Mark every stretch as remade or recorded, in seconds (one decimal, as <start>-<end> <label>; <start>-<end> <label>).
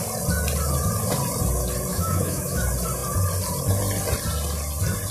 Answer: 0.0-1.9 recorded; 1.9-2.6 remade; 2.6-5.1 recorded